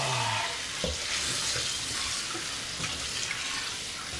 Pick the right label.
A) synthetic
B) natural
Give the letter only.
B